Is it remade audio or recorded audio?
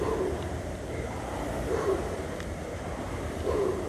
remade